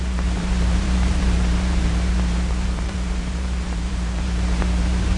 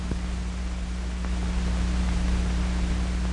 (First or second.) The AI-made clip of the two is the first